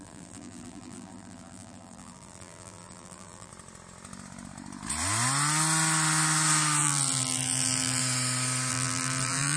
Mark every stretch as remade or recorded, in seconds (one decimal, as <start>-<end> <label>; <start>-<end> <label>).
0.0-3.5 remade; 3.5-6.8 recorded; 6.8-8.0 remade; 8.0-8.7 recorded; 8.7-9.6 remade